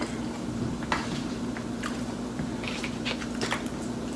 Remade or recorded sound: recorded